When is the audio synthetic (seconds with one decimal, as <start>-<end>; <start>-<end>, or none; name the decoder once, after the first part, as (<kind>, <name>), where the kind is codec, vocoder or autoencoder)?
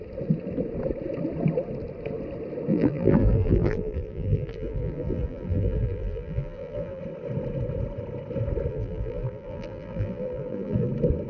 2.7-7.0 (vocoder, BigVGAN v2); 8.7-10.9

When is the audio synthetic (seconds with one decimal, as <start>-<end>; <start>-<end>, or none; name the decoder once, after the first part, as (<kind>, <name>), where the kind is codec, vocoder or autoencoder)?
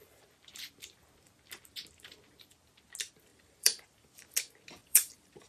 3.3-4.1 (vocoder, BigVGAN v2); 4.8-5.5